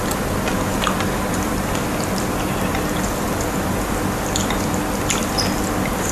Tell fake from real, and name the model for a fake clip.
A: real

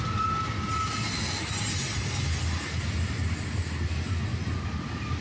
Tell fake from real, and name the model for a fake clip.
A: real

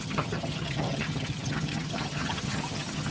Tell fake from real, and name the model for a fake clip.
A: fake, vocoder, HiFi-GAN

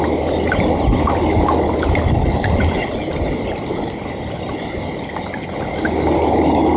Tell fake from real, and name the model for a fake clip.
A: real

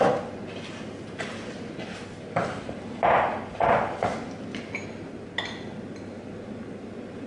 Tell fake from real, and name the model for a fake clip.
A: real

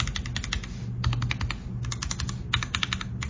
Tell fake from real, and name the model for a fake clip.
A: real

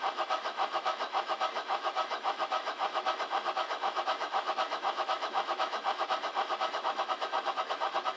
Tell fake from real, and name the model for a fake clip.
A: fake, autoencoder, DAC-VAE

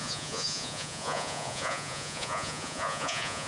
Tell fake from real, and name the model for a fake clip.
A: fake, vocoder, Vocos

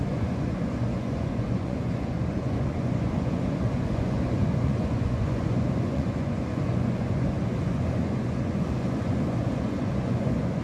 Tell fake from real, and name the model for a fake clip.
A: fake, vocoder, Vocos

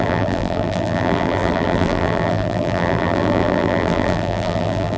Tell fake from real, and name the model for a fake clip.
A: fake, vocoder, BigVGAN v2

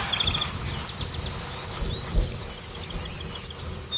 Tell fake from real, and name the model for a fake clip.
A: real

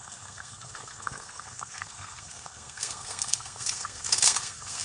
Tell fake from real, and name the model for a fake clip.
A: fake, codec, SNAC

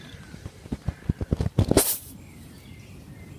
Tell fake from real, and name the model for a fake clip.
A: real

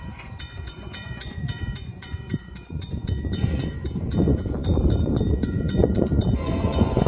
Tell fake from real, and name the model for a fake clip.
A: fake, vocoder, Vocos